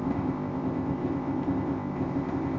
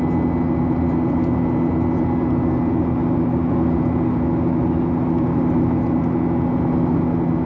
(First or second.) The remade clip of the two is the first